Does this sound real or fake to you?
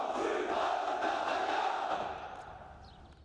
real